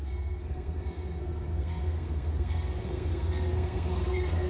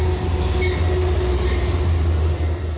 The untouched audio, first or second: second